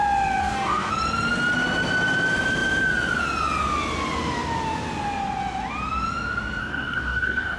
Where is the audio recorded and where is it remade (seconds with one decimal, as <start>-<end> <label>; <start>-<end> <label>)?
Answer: 0.0-0.4 recorded; 0.4-0.9 remade; 0.9-6.6 recorded; 6.6-7.6 remade

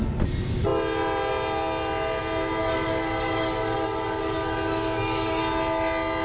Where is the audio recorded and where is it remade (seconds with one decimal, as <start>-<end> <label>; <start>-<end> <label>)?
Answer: 0.0-2.6 recorded; 2.6-5.4 remade; 5.4-6.2 recorded

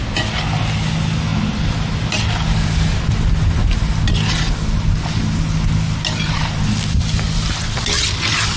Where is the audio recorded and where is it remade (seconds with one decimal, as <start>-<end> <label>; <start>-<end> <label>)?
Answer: 0.0-8.6 recorded

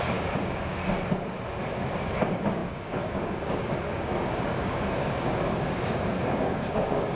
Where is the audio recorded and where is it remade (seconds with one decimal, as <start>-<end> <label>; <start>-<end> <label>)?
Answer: 0.0-0.8 remade; 0.8-1.7 recorded; 1.7-7.2 remade

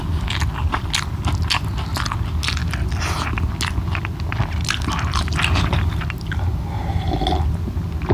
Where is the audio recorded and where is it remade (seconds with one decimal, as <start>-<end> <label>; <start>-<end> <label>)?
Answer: 0.0-8.1 recorded

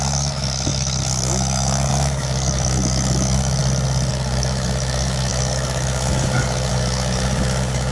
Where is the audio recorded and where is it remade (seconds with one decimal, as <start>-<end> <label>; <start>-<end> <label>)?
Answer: 0.0-3.6 remade; 3.6-4.1 recorded; 4.1-7.9 remade

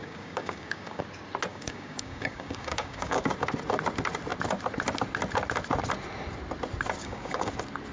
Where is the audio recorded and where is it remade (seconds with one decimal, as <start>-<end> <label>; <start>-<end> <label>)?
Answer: 0.0-1.0 remade; 1.0-1.5 recorded; 1.5-3.3 remade; 3.3-7.0 recorded; 7.0-7.5 remade; 7.5-7.9 recorded

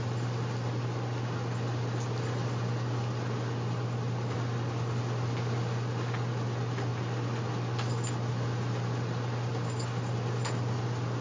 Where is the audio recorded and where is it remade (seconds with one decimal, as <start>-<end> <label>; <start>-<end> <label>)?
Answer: 0.0-11.2 recorded